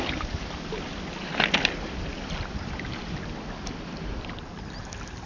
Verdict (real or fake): real